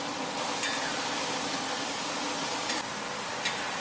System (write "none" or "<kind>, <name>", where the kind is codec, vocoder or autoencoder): none